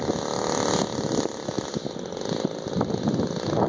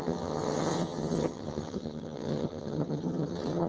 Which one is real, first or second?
first